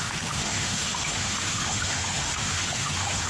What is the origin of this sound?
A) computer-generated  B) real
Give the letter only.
A